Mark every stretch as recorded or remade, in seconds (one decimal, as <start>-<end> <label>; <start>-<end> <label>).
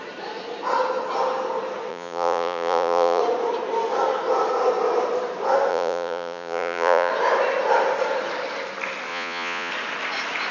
0.0-1.9 recorded; 1.9-3.2 remade; 3.2-5.7 recorded; 5.7-7.1 remade; 7.1-9.1 recorded; 9.1-9.7 remade; 9.7-10.5 recorded